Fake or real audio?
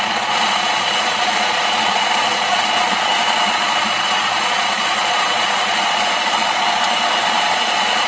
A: fake